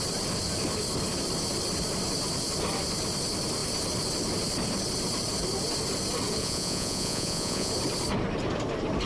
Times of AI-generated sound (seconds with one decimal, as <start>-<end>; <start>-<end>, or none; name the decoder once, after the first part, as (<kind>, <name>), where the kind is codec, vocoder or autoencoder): 6.4-7.7 (vocoder, Vocos)

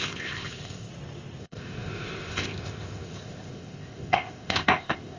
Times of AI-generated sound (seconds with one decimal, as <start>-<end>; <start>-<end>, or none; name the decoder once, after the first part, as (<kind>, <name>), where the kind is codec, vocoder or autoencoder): 0.0-0.9 (codec, ZipCodec); 1.4-5.2